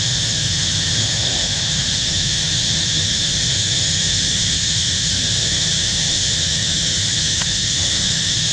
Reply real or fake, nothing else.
fake